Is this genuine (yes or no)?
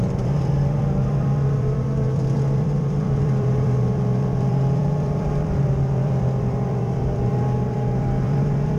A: no